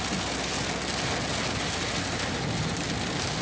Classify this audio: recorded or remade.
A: recorded